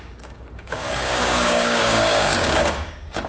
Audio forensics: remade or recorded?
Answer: remade